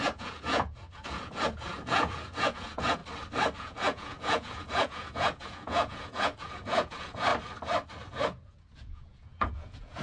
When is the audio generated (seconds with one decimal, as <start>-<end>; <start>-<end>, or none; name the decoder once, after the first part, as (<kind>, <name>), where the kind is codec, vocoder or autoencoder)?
0.0-3.0 (vocoder, Vocos); 3.6-7.3; 8.1-10.0